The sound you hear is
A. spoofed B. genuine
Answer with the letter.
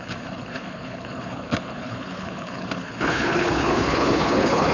A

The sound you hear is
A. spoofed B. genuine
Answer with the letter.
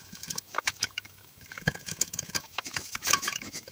A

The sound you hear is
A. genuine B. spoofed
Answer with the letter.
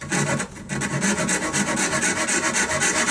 A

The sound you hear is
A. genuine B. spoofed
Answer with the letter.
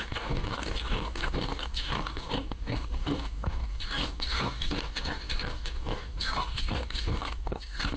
B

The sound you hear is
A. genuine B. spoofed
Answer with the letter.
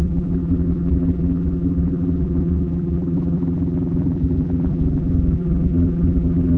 B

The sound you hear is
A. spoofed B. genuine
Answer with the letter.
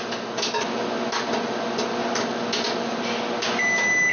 B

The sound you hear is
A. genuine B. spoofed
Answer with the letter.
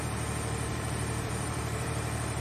B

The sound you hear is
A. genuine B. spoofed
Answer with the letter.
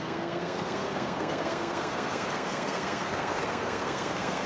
B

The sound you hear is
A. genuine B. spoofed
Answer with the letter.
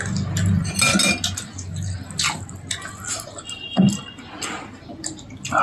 A